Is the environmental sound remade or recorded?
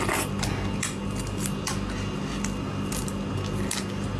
recorded